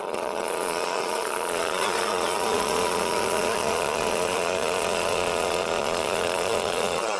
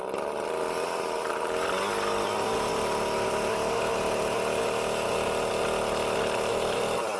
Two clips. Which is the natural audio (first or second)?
second